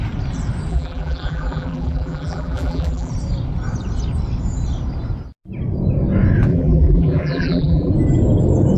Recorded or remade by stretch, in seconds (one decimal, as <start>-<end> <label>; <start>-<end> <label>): 0.0-0.7 recorded; 0.7-3.1 remade; 3.1-6.5 recorded; 6.5-7.9 remade; 7.9-8.8 recorded